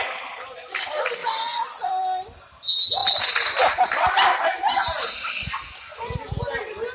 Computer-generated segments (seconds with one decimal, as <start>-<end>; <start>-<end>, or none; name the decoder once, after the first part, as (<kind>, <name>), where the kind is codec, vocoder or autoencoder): 1.2-1.9 (vocoder, WaveNeXt)